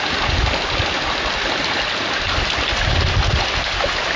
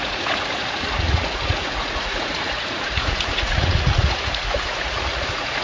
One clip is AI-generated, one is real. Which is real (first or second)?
first